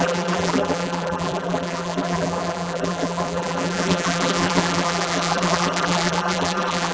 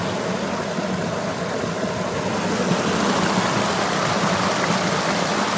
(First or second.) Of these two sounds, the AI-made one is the first